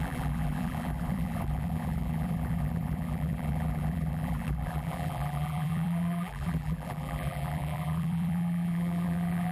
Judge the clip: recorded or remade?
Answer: remade